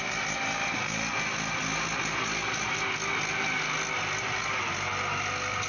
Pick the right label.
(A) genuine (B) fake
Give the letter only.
A